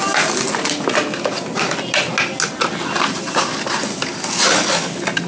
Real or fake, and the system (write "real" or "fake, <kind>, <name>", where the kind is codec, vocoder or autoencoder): real